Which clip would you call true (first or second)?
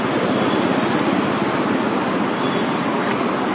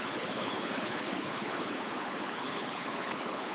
first